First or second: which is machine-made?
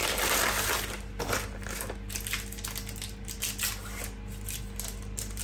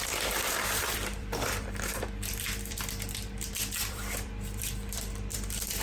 second